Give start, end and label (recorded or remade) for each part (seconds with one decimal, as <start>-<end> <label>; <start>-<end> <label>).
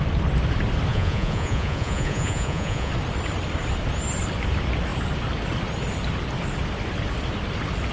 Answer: 0.0-0.9 recorded; 0.9-2.9 remade; 2.9-7.9 recorded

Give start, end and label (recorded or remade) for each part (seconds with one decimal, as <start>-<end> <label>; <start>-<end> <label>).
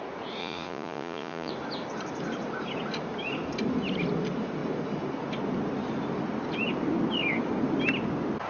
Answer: 0.0-0.4 recorded; 0.4-1.5 remade; 1.5-8.5 recorded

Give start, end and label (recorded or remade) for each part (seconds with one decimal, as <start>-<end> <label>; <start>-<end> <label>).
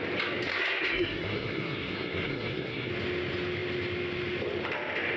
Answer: 0.0-0.5 recorded; 0.5-2.9 remade; 2.9-5.2 recorded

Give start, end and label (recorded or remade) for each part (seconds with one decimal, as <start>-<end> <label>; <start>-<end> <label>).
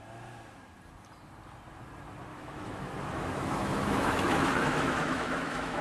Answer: 0.0-2.3 recorded; 2.3-5.8 remade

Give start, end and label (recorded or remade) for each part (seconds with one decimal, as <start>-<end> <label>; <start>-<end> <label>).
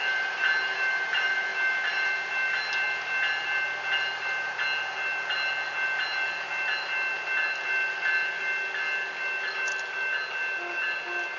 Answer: 0.0-11.4 recorded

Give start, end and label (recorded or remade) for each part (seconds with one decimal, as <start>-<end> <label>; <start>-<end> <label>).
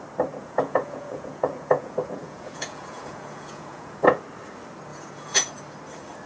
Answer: 0.0-0.4 recorded; 0.4-4.2 remade; 4.2-4.9 recorded; 4.9-5.5 remade; 5.5-6.3 recorded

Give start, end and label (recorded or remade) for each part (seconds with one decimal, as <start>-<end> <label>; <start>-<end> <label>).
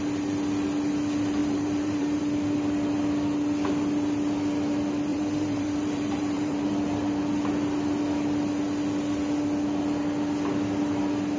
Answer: 0.0-1.4 recorded; 1.4-2.2 remade; 2.2-5.1 recorded; 5.1-6.7 remade; 6.7-11.4 recorded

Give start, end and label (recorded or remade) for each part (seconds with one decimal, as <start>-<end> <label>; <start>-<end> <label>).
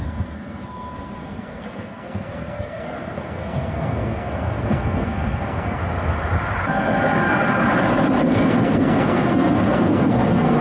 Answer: 0.0-5.8 remade; 5.8-8.2 recorded; 8.2-10.6 remade